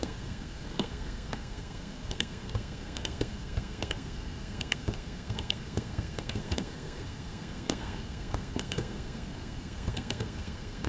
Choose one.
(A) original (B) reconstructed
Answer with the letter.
B